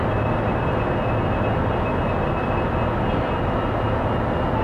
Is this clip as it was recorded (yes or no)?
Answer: yes